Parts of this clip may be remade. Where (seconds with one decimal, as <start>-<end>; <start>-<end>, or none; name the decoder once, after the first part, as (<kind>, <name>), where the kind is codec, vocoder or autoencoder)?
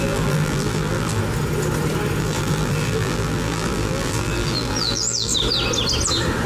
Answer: 0.0-1.2 (vocoder, BigVGAN v2); 2.2-5.3